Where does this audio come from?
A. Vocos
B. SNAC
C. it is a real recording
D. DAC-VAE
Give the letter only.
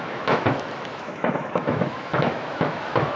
D